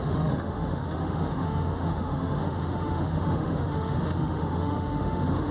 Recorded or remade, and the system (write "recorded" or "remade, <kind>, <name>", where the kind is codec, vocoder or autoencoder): remade, autoencoder, DAC-VAE